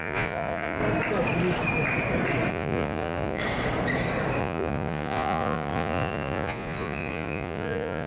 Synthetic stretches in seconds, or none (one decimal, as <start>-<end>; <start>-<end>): 0.0-0.8; 2.5-3.4; 4.4-8.1